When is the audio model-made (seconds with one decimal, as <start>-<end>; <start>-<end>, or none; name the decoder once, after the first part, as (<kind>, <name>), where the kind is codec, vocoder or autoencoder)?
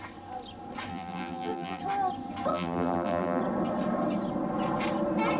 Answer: 0.9-1.8 (vocoder, BigVGAN v2); 2.5-3.4